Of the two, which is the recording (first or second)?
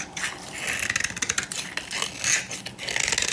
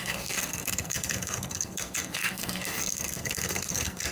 first